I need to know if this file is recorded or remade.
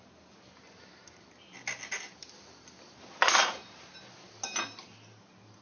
recorded